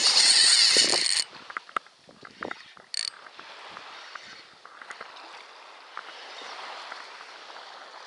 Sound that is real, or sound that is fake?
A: real